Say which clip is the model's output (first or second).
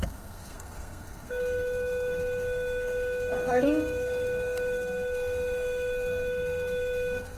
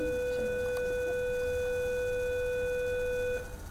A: first